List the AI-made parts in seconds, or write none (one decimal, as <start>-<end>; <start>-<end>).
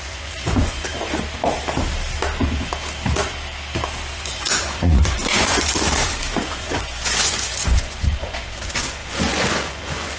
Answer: 0.0-0.9; 4.1-10.2